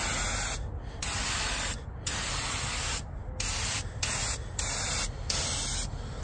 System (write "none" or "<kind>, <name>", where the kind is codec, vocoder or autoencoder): none